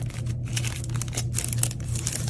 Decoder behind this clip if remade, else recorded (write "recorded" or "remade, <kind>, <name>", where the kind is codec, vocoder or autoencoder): recorded